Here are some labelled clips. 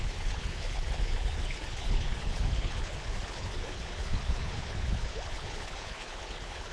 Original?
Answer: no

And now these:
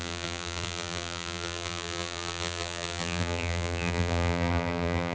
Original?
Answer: no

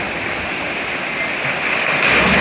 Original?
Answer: yes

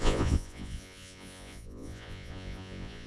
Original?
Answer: no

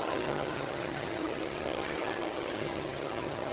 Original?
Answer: no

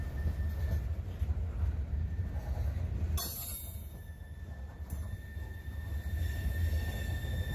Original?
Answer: yes